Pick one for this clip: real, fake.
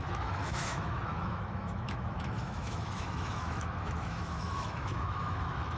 fake